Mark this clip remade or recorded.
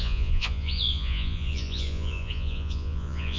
remade